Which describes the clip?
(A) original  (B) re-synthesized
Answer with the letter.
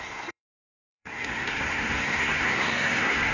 B